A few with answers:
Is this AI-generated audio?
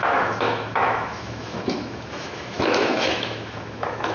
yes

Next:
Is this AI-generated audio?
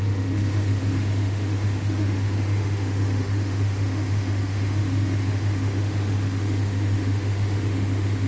yes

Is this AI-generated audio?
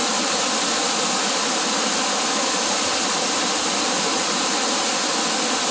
no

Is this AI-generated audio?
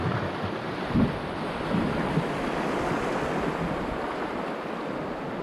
no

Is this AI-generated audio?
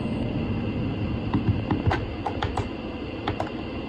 no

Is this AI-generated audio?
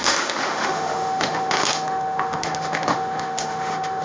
yes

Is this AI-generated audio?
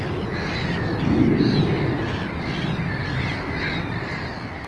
no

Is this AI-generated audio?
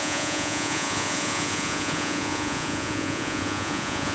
yes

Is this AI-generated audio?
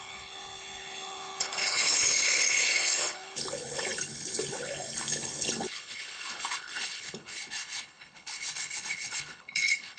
yes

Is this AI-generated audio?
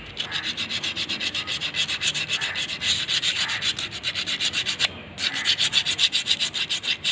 no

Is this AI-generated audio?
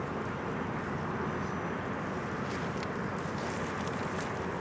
no